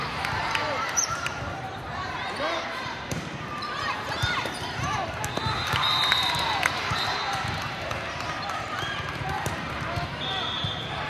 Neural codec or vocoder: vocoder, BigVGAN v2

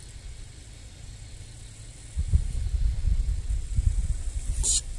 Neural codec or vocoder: none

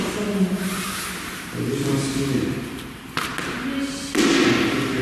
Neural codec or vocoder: none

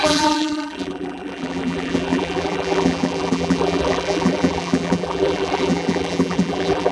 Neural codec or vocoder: vocoder, BigVGAN v2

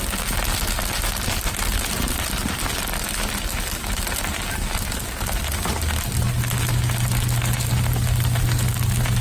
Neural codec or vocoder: none